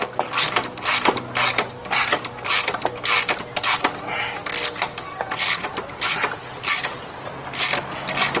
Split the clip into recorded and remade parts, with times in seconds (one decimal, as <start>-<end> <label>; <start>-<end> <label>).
0.0-8.4 recorded